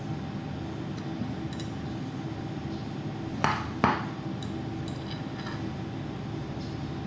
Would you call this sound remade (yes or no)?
no